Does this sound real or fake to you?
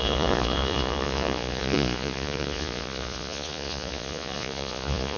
fake